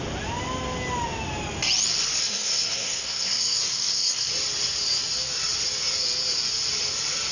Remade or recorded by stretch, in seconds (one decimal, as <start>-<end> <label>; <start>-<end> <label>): 0.0-2.2 recorded; 2.2-4.3 remade; 4.3-7.3 recorded

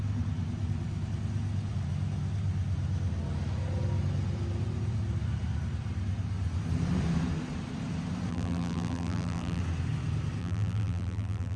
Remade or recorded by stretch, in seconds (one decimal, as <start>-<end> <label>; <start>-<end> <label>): 0.0-8.3 recorded; 8.3-9.6 remade; 9.6-10.4 recorded; 10.4-11.6 remade

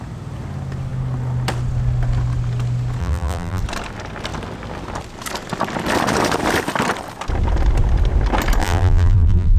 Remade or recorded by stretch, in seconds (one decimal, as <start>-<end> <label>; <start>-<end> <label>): 0.0-3.0 recorded; 3.0-3.6 remade; 3.6-8.6 recorded; 8.6-9.6 remade